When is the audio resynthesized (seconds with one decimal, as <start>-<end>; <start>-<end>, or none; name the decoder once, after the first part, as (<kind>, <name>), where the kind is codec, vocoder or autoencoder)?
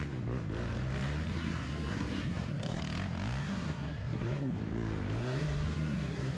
1.3-2.8 (codec, SNAC); 3.4-4.6; 5.2-6.4